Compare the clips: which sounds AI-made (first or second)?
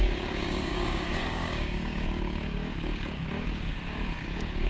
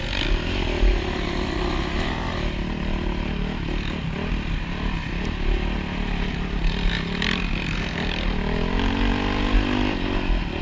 first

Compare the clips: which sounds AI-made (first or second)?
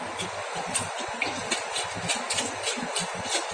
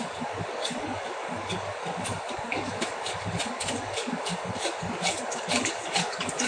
second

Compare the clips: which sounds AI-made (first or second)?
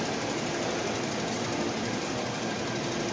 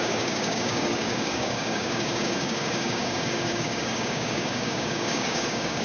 second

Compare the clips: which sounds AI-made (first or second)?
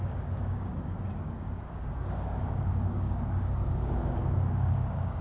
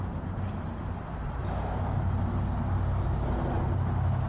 first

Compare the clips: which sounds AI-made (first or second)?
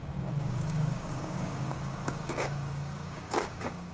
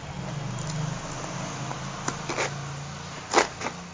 first